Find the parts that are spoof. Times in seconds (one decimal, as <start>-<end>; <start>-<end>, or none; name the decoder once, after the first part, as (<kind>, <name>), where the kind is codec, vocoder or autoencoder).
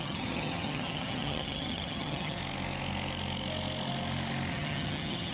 0.0-2.4 (vocoder, HiFi-GAN); 4.5-5.3